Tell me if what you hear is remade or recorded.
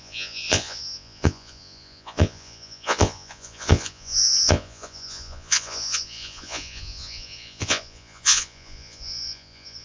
remade